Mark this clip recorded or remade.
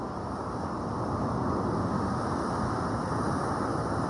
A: recorded